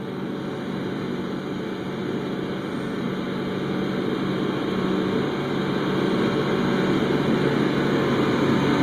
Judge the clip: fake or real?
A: real